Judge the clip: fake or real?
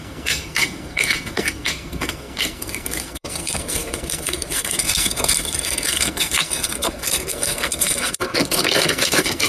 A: fake